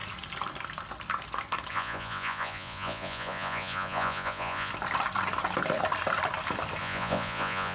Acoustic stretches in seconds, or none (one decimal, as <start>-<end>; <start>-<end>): 0.0-1.7; 4.7-6.8